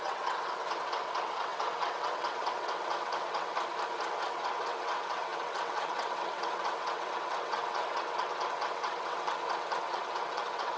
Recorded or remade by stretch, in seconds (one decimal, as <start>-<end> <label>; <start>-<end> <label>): 0.0-3.5 remade; 3.5-4.0 recorded; 4.0-10.8 remade